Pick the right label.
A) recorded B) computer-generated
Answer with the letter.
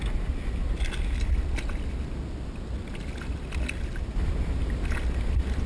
A